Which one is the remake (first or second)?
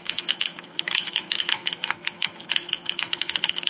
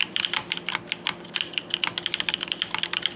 first